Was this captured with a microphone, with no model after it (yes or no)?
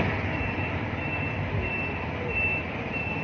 yes